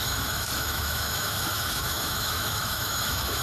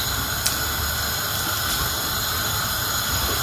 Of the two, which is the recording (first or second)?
second